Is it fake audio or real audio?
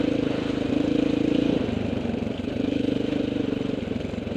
real